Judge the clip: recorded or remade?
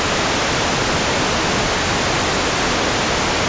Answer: recorded